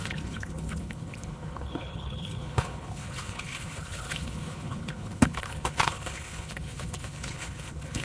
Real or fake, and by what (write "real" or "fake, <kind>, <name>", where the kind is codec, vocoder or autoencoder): fake, codec, HILCodec